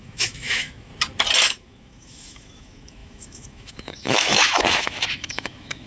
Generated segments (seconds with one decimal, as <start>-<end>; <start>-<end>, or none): 0.0-0.9; 1.4-5.9